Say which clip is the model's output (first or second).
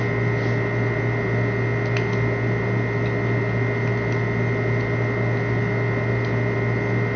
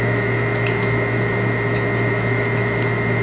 second